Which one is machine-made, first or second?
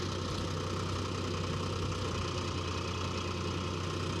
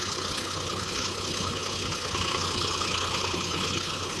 second